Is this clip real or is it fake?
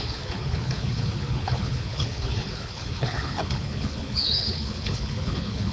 fake